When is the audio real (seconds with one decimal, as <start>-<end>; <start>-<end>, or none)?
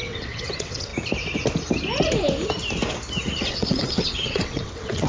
0.9-3.5